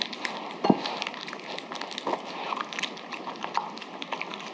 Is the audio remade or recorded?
recorded